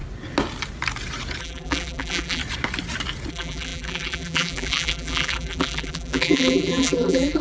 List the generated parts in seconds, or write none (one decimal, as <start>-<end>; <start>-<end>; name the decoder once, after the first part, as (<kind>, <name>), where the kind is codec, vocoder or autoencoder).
1.4-2.4 (vocoder, BigVGAN v2); 3.3-7.4

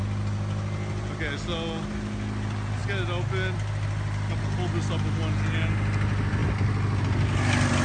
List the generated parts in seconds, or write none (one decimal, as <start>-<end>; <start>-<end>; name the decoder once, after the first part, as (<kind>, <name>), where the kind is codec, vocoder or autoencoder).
none